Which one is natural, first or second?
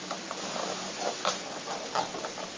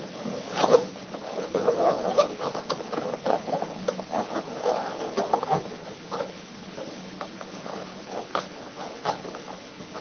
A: first